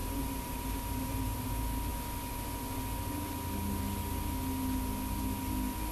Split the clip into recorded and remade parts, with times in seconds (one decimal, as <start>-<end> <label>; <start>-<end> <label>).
0.0-1.5 remade; 1.5-5.9 recorded